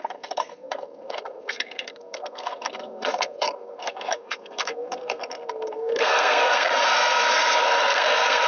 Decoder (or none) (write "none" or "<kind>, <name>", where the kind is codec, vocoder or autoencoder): codec, SNAC